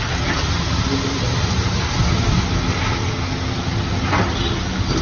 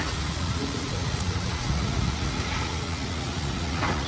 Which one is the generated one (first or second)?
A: second